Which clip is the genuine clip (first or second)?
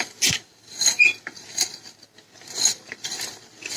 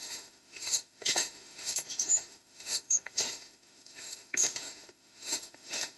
first